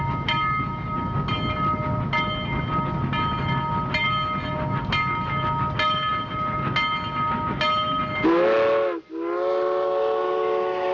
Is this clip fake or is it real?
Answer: real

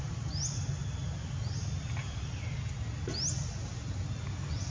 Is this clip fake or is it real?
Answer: real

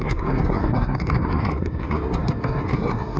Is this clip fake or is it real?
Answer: fake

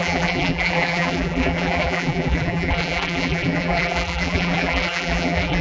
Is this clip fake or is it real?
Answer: fake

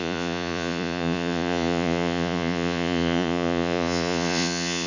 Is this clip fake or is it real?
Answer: fake